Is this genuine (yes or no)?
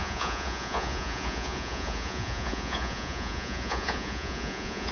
no